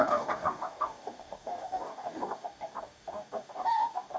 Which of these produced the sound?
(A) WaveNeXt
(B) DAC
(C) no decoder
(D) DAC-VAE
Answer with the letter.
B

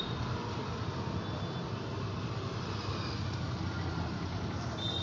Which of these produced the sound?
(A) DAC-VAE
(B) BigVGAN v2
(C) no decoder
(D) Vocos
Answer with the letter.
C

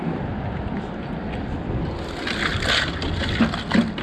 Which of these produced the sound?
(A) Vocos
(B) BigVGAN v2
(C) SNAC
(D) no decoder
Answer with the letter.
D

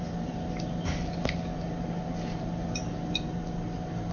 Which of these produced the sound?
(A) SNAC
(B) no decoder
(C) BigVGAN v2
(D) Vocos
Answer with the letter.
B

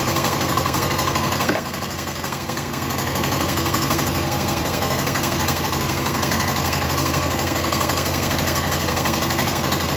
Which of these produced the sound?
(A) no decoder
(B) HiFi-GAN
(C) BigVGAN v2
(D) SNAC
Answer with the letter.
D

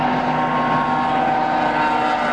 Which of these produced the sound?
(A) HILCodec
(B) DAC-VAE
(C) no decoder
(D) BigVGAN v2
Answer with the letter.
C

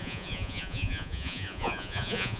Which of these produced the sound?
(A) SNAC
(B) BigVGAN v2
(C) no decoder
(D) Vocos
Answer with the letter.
D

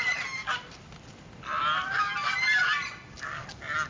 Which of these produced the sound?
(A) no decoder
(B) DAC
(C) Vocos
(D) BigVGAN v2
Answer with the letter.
D